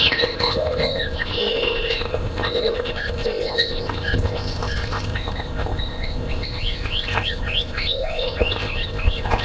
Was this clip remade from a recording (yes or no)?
yes